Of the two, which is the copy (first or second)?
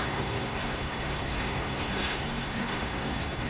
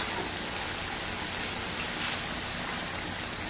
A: first